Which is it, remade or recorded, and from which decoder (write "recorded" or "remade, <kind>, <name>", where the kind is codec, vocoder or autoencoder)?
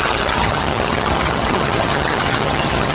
remade, vocoder, HiFi-GAN